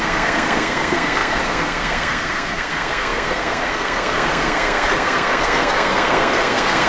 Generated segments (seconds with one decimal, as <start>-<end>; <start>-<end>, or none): 0.0-6.9